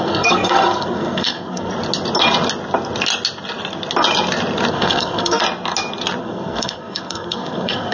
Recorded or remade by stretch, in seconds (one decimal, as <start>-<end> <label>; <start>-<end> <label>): 0.0-1.7 remade; 1.7-4.7 recorded; 4.7-5.4 remade; 5.4-6.2 recorded; 6.2-7.9 remade